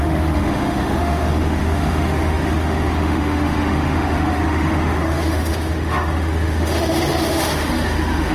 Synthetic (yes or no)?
yes